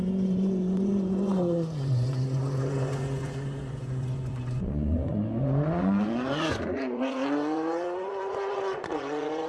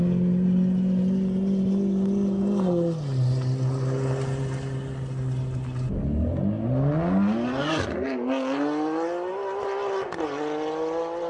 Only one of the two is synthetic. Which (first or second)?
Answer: first